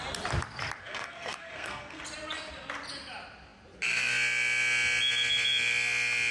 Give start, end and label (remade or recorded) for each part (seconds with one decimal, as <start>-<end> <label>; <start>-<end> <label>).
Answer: 0.0-0.8 recorded; 0.8-2.0 remade; 2.0-6.3 recorded